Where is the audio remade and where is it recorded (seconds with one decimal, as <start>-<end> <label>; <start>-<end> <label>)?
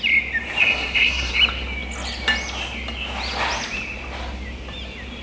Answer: 0.0-0.6 recorded; 0.6-1.3 remade; 1.3-5.2 recorded